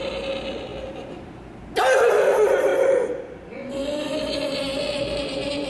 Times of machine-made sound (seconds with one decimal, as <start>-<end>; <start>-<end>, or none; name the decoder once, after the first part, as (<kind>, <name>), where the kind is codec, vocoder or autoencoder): none